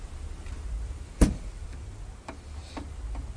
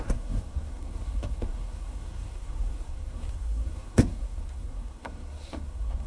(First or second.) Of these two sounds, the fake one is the second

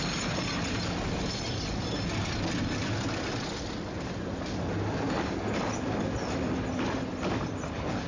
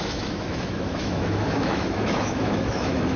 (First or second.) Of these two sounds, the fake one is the second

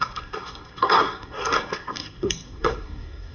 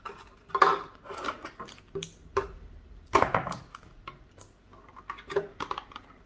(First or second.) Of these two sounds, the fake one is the first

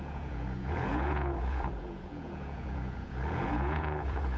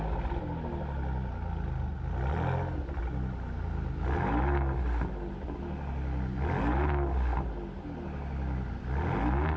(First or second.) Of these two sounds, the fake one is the first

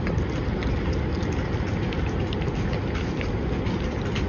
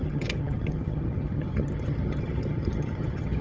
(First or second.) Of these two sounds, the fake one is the second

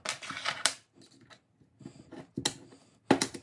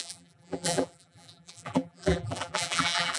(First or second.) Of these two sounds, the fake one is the second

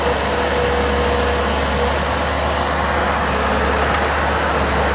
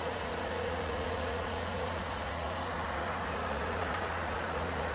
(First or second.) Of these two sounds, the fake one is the second